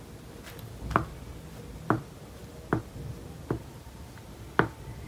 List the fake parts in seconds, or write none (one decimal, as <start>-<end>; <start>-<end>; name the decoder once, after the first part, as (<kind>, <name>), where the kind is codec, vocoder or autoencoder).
none